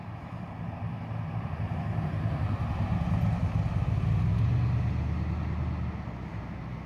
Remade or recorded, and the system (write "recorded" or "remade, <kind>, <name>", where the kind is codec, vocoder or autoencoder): recorded